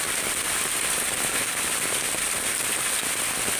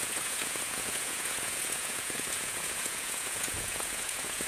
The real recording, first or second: first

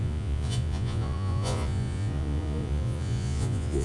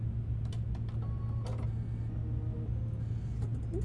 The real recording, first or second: second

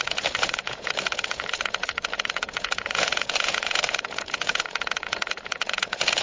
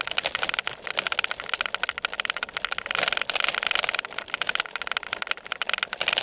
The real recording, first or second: second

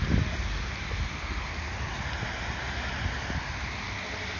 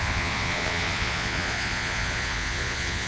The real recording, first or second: first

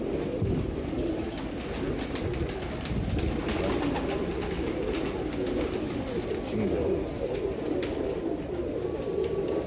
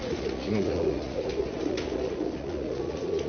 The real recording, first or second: first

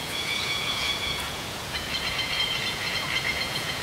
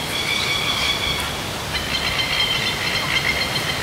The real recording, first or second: second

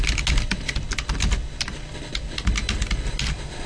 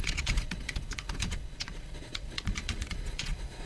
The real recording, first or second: first